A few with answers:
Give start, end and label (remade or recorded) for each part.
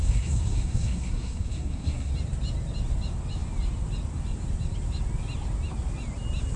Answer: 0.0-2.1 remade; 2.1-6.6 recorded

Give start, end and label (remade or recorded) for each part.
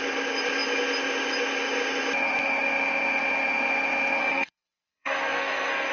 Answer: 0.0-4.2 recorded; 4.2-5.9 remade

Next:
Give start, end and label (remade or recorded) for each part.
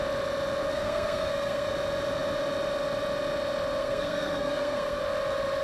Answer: 0.0-0.7 recorded; 0.7-1.7 remade; 1.7-3.8 recorded; 3.8-5.0 remade; 5.0-5.6 recorded